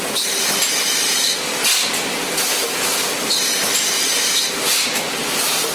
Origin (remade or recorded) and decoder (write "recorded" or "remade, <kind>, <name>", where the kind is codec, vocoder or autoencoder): recorded